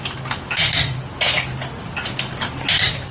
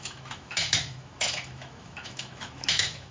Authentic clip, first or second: first